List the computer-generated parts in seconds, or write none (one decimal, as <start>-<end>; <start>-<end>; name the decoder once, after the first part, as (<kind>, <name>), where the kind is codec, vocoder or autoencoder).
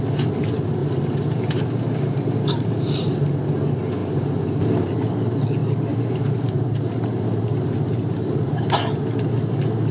0.8-2.3 (vocoder, BigVGAN v2); 5.6-8.6